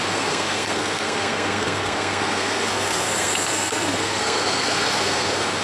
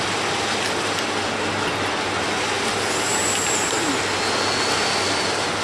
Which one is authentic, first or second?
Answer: second